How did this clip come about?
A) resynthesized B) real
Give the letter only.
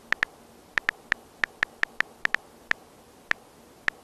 B